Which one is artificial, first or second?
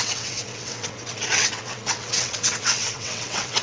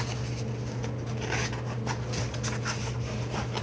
first